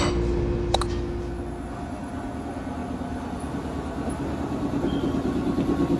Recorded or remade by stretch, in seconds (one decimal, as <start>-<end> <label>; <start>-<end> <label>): 0.0-6.0 recorded